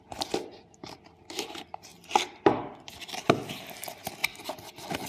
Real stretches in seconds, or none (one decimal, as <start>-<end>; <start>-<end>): 0.0-5.1